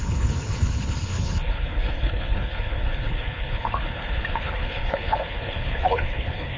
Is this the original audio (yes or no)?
no